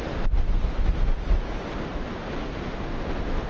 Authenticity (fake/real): real